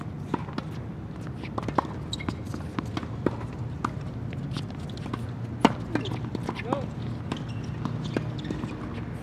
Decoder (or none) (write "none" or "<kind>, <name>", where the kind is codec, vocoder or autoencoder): none